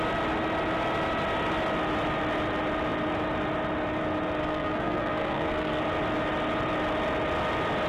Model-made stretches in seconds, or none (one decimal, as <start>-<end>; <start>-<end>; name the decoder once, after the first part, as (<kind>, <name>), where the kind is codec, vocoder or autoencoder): 4.4-5.8 (codec, SNAC)